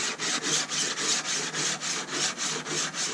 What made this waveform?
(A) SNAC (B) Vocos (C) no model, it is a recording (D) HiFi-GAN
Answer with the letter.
C